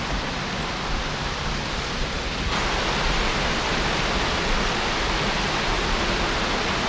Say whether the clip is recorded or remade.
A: recorded